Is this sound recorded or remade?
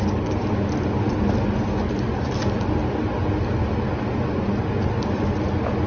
recorded